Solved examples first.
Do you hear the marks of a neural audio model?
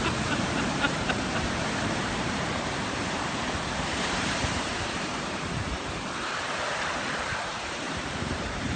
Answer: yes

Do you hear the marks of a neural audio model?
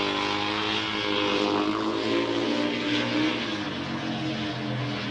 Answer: no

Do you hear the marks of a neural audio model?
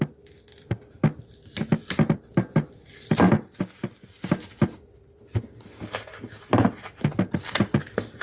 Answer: no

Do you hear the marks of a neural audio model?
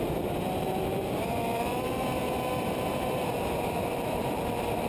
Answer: yes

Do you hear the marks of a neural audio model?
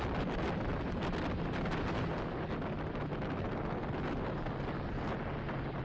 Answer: no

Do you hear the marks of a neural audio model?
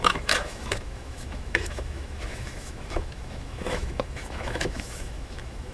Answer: yes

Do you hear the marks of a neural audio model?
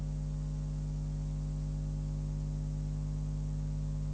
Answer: no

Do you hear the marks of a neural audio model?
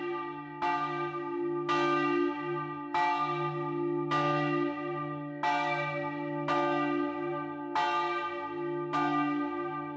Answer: no